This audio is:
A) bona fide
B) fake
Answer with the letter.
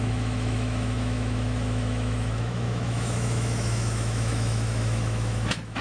B